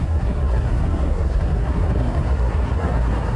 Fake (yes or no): yes